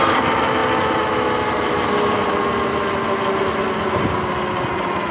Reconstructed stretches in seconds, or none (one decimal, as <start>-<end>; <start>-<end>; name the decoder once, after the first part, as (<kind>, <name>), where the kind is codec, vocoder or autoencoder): none